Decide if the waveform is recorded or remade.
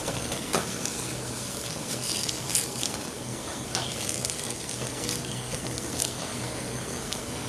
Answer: remade